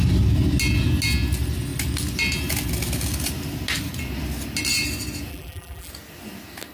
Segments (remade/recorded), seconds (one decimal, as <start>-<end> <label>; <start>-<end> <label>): 0.0-5.3 recorded; 5.3-5.9 remade; 5.9-6.7 recorded